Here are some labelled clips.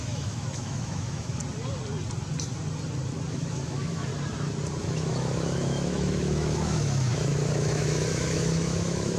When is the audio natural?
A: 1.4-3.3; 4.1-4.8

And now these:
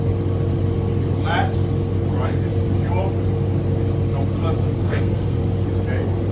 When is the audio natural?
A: 0.0-4.8; 5.4-6.3

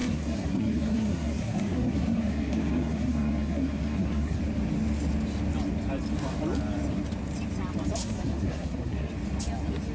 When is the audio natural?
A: 4.4-8.0; 9.1-9.9

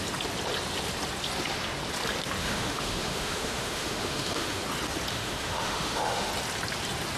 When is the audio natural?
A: 0.0-2.4; 4.6-5.1; 6.3-7.2

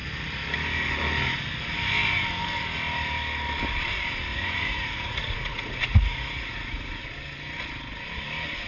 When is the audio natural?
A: 0.0-4.3; 7.0-8.7